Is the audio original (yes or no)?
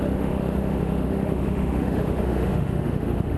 no